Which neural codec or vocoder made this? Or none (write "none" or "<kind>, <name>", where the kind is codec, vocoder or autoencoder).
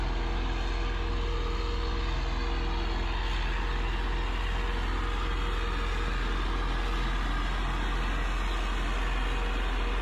none